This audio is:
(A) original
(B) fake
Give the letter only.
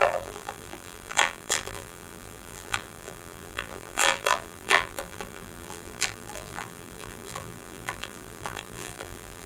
B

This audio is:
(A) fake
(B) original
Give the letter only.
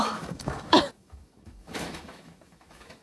A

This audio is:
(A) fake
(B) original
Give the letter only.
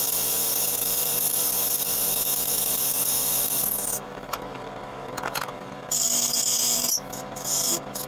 A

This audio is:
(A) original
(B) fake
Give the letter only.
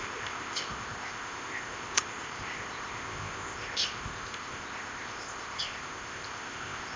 B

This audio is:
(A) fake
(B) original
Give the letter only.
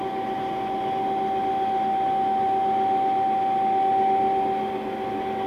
B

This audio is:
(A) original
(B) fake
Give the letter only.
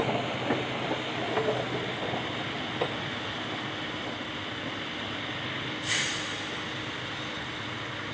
A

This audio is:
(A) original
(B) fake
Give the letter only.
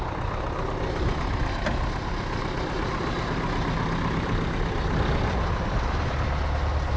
A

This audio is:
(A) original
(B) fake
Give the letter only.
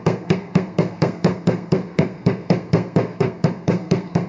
B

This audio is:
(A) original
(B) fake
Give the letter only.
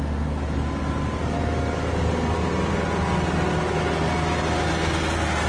A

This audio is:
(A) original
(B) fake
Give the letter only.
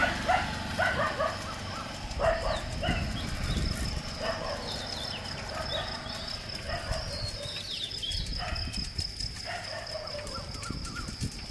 A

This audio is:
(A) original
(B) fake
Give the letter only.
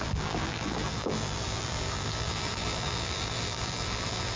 B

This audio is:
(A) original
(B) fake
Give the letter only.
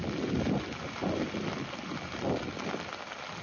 A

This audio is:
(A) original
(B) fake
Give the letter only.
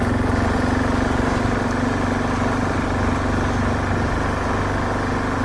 A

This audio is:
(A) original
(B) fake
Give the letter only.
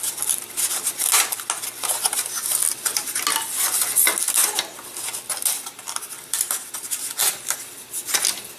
A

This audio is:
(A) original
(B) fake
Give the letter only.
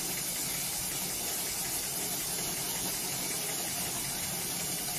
A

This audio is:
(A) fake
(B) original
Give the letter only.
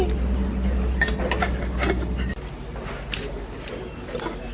B